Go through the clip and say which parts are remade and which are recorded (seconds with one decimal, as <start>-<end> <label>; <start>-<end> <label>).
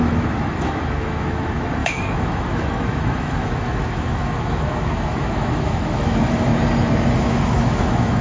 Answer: 0.0-6.5 remade; 6.5-7.1 recorded; 7.1-8.2 remade